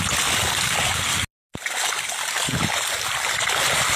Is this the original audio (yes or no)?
yes